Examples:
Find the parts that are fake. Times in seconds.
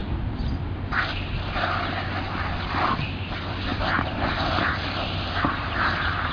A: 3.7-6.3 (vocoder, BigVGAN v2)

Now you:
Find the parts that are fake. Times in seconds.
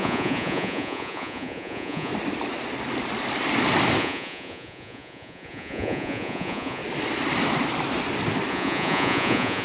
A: 0.0-2.1 (vocoder, Vocos); 4.0-6.8; 8.5-9.6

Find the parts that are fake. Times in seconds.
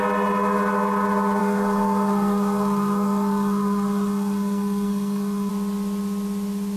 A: 1.4-5.5 (codec, SNAC)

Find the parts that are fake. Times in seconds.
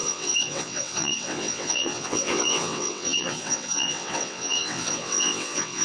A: 0.0-5.8 (vocoder, WaveNeXt)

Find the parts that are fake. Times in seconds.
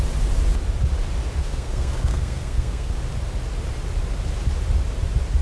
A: 1.4-3.0 (codec, SNAC)